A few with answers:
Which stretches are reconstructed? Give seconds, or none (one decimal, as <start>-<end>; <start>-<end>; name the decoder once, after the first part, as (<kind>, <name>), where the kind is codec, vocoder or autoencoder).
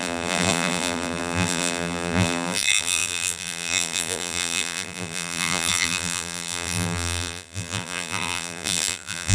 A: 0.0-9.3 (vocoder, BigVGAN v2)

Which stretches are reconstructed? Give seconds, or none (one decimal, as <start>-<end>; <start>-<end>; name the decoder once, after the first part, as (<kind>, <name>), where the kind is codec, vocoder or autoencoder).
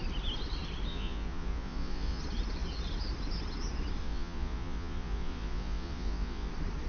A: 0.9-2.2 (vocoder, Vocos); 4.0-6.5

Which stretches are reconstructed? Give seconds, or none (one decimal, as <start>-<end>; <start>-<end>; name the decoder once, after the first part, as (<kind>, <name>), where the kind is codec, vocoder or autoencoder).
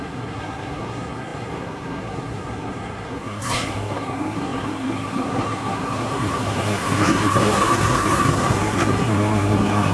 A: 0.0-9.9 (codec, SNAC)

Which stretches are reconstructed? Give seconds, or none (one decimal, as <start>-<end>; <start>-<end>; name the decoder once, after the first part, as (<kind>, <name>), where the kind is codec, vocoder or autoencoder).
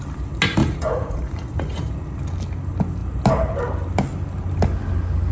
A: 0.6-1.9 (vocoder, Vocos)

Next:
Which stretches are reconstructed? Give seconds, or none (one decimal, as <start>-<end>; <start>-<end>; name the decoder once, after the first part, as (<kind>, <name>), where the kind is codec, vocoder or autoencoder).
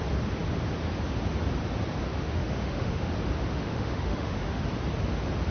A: 2.1-3.1 (autoencoder, DAC-VAE); 3.6-4.6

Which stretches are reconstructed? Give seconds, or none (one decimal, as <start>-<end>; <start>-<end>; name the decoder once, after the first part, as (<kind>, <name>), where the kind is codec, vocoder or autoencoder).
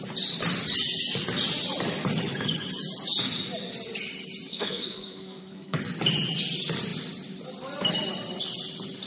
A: 4.5-5.8 (codec, SNAC)